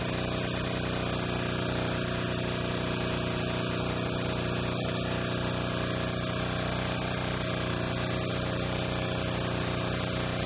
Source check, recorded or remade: recorded